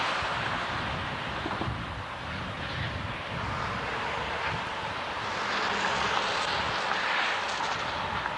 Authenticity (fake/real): real